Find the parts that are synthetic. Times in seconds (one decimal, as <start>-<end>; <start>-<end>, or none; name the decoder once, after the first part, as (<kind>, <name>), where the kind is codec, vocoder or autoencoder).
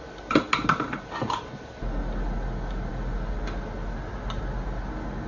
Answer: none